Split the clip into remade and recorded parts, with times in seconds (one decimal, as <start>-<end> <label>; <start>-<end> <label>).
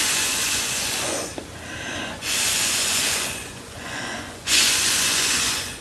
0.0-1.3 remade; 1.3-1.9 recorded; 1.9-5.8 remade